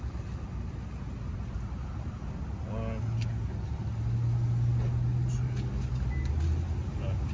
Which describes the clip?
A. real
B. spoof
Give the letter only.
A